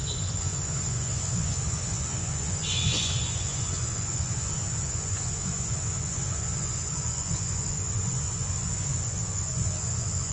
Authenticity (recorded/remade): remade